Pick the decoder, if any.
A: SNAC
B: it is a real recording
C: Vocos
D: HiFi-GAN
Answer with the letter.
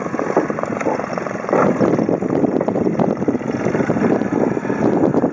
B